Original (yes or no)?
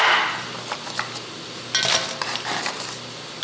yes